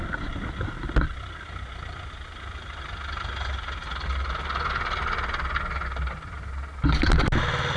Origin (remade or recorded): recorded